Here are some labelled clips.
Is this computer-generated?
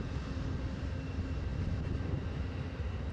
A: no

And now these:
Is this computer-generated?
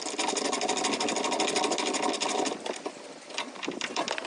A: no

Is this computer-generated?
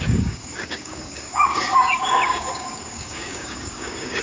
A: yes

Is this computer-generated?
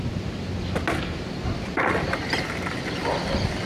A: no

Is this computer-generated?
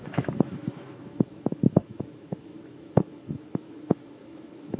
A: yes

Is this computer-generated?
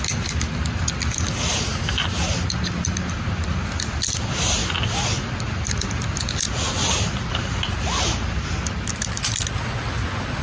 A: no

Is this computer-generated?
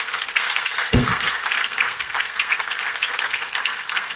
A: yes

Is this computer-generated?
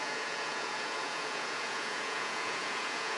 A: yes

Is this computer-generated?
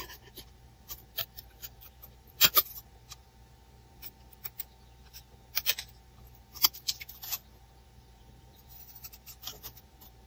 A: yes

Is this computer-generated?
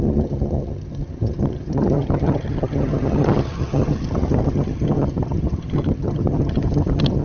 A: yes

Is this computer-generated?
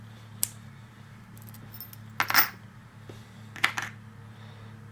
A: no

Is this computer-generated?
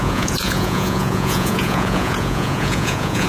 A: yes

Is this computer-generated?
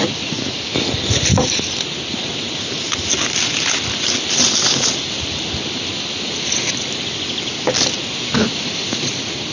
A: no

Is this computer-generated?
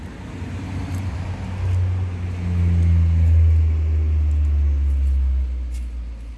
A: no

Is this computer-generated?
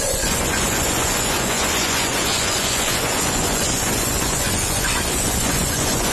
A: yes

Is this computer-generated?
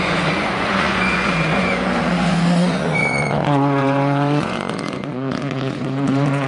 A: yes